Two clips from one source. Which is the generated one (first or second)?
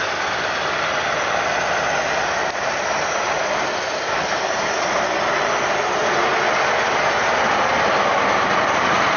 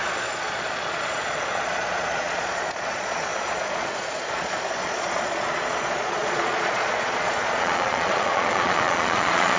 second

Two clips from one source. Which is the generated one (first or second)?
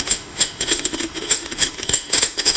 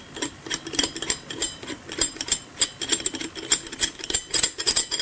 first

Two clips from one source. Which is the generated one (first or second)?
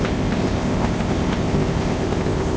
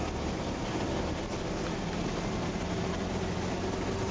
first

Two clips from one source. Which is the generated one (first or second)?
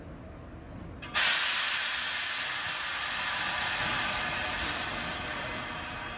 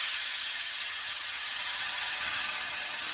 second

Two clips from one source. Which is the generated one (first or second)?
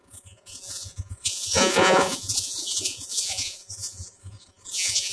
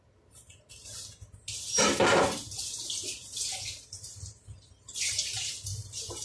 first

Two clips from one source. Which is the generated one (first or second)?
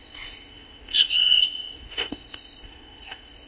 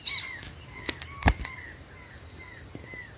first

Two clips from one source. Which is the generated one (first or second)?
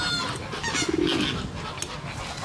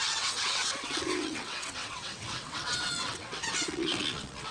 second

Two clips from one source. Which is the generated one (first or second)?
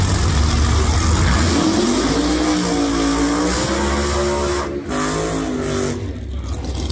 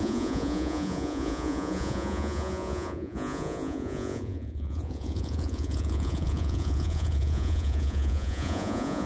second